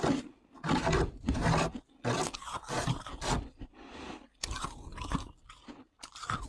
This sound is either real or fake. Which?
real